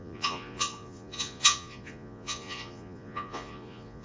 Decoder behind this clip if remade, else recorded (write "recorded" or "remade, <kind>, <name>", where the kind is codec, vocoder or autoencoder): remade, vocoder, Vocos